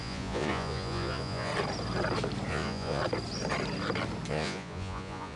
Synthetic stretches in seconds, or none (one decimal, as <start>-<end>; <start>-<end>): 0.0-1.5; 2.5-3.0; 4.3-5.4